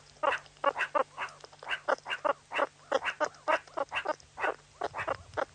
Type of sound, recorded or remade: recorded